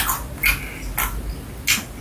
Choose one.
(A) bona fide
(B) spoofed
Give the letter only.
A